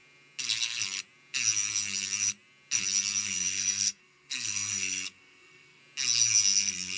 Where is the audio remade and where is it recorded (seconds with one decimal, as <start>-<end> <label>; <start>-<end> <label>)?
0.0-3.3 recorded; 3.3-5.8 remade; 5.8-7.0 recorded

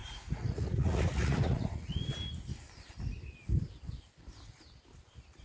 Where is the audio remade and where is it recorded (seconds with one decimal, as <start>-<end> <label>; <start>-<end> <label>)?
0.0-2.0 remade; 2.0-5.4 recorded

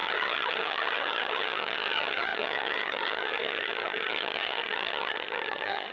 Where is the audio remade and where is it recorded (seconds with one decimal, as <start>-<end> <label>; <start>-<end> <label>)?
0.0-5.9 remade

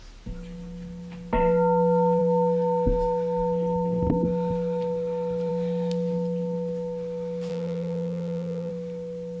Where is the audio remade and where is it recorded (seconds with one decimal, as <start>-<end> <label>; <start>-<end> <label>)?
0.0-7.5 recorded; 7.5-8.7 remade; 8.7-9.4 recorded

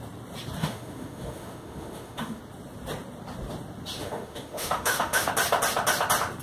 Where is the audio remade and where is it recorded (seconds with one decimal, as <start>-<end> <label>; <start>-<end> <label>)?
0.0-0.6 recorded; 0.6-2.4 remade; 2.4-4.0 recorded; 4.0-5.3 remade; 5.3-6.4 recorded

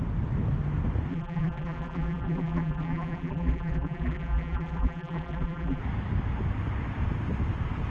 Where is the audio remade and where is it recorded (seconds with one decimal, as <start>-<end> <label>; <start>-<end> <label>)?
0.0-1.1 recorded; 1.1-5.8 remade; 5.8-7.9 recorded

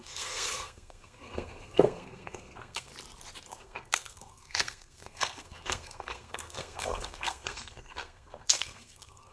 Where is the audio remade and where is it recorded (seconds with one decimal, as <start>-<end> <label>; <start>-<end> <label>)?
0.0-2.9 remade; 2.9-3.5 recorded; 3.5-9.3 remade